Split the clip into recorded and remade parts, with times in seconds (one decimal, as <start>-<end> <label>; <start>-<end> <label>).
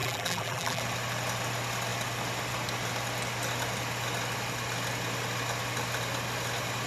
0.0-0.8 remade; 0.8-6.9 recorded